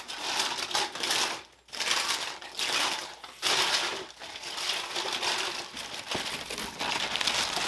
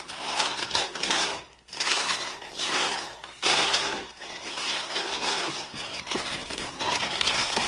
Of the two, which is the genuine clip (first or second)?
first